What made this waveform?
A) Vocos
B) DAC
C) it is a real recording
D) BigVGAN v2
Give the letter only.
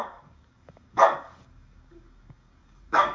B